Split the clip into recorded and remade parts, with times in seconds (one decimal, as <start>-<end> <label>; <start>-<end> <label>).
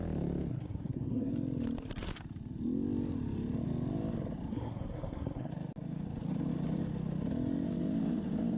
0.0-0.5 recorded; 0.5-1.3 remade; 1.3-4.5 recorded; 4.5-5.5 remade; 5.5-8.6 recorded